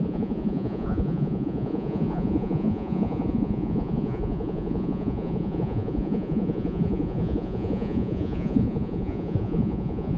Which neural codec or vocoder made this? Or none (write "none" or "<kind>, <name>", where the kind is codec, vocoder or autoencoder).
vocoder, Vocos